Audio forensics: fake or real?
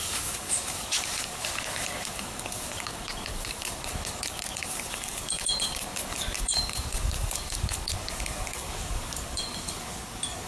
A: fake